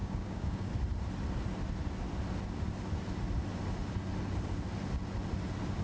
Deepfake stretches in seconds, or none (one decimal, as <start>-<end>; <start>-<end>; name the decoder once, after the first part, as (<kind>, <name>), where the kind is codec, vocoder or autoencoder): 0.0-0.7 (codec, DAC)